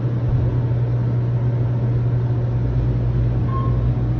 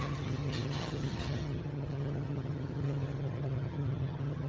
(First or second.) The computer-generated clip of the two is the second